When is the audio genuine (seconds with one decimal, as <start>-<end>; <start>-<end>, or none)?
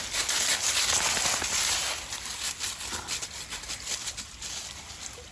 0.0-5.3